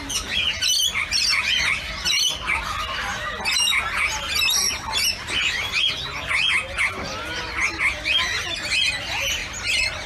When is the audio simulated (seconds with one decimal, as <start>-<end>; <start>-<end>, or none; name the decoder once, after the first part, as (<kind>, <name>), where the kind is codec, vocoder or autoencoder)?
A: none

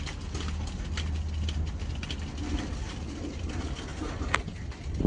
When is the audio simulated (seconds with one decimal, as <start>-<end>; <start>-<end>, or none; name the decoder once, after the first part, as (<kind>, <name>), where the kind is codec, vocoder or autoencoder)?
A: none

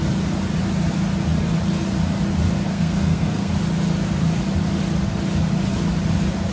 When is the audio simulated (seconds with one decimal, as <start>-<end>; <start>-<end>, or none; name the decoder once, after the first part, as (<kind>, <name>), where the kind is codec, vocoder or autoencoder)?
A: 2.7-3.5 (codec, SNAC)

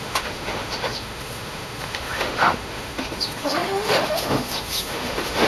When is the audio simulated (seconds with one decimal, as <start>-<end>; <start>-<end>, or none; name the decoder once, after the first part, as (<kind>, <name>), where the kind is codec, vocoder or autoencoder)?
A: 0.0-5.5 (autoencoder, DAC-VAE)

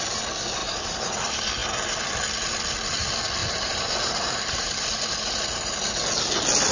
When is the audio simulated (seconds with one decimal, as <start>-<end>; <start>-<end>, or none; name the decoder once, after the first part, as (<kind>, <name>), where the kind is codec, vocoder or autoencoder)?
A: 0.6-1.2 (vocoder, BigVGAN v2); 3.4-5.7

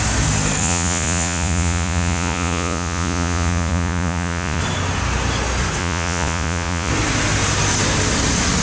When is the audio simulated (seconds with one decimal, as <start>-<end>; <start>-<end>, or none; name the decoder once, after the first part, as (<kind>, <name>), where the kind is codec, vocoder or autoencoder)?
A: 0.6-4.6 (vocoder, Vocos); 5.8-6.9

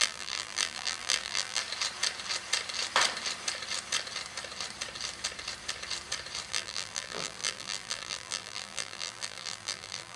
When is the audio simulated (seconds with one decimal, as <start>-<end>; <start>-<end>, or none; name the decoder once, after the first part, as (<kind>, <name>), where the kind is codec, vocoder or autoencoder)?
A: 0.0-1.6 (vocoder, BigVGAN v2); 6.5-10.2